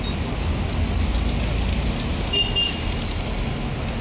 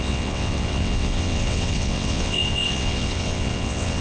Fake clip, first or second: second